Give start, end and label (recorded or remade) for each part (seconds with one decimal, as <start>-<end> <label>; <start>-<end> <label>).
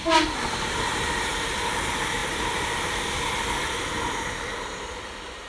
0.0-5.5 recorded